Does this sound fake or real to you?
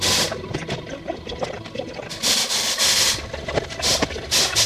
real